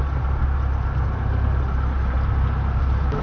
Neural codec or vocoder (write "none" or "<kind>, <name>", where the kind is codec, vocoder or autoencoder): none